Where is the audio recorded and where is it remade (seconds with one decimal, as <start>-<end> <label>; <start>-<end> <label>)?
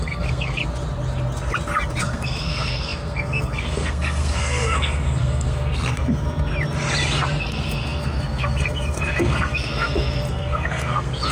0.0-0.6 remade; 0.6-2.0 recorded; 2.0-6.5 remade; 6.5-7.5 recorded; 7.5-11.3 remade